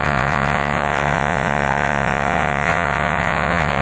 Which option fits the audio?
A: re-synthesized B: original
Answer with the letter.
A